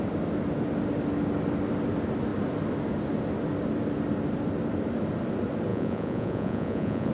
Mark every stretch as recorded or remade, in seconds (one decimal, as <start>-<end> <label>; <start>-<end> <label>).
0.0-5.7 recorded; 5.7-7.1 remade